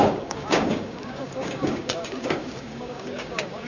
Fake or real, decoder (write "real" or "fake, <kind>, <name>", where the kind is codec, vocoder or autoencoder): fake, codec, DAC